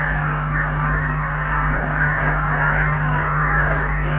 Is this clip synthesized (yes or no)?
yes